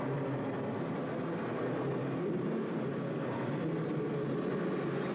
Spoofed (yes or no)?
no